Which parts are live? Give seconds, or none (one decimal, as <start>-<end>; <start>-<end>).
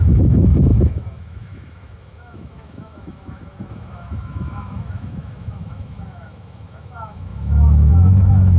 none